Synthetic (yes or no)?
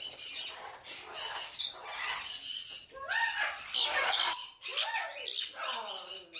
no